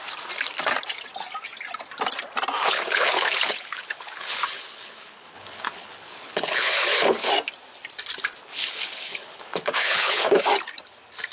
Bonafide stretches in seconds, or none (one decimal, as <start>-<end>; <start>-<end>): 0.0-2.6; 7.3-8.4; 10.4-11.3